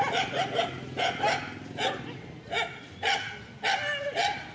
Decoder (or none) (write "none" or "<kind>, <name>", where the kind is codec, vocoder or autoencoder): none